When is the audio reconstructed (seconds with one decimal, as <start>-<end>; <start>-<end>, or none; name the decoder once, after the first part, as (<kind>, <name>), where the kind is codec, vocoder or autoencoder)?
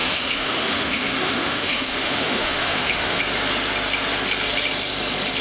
0.0-3.2 (autoencoder, DAC-VAE)